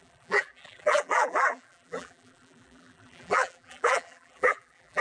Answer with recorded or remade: remade